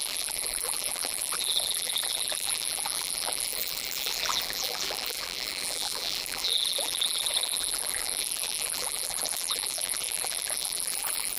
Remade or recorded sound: remade